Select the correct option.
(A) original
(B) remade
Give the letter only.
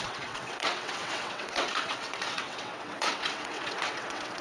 B